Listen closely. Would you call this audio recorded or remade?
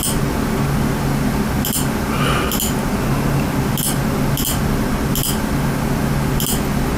recorded